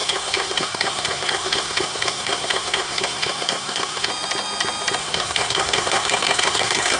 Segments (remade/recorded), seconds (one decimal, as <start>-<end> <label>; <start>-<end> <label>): 0.0-4.1 remade; 4.1-5.0 recorded; 5.0-7.0 remade